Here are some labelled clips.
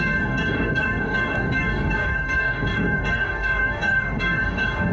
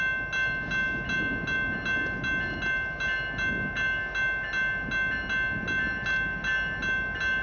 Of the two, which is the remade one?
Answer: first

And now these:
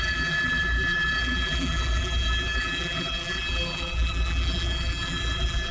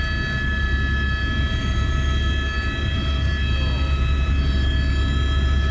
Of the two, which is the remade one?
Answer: first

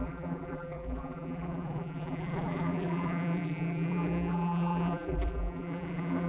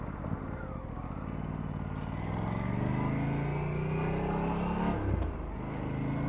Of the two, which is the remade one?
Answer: first